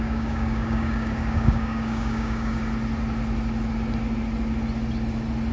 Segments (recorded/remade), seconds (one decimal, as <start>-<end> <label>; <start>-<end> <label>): 0.0-2.6 remade; 2.6-5.5 recorded